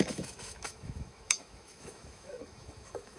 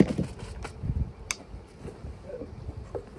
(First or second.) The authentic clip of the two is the second